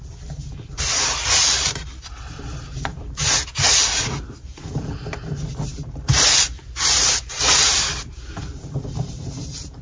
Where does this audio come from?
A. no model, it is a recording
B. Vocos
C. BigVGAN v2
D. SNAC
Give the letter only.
C